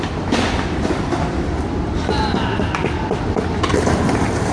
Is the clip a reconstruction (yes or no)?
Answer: no